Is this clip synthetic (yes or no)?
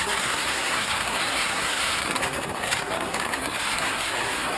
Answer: yes